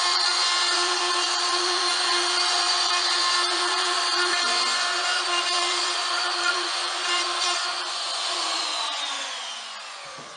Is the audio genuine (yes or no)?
no